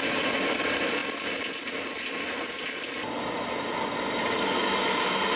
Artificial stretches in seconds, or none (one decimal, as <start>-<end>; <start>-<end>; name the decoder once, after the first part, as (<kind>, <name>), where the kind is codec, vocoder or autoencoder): none